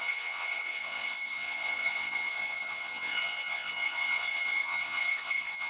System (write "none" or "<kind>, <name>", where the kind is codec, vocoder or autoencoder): vocoder, WaveNeXt